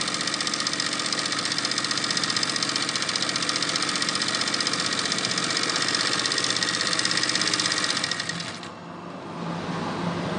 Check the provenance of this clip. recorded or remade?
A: recorded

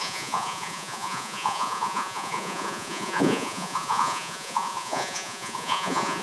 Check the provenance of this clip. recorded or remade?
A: remade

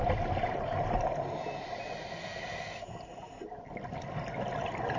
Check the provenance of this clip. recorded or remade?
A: recorded